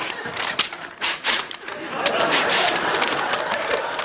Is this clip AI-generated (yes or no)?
yes